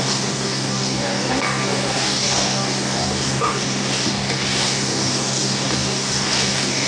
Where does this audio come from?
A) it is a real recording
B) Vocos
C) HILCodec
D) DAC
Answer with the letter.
D